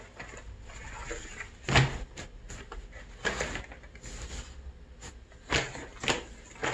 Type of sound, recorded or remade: recorded